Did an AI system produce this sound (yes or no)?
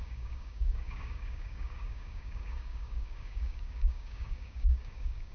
yes